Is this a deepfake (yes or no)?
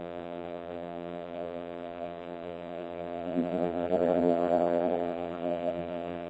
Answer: yes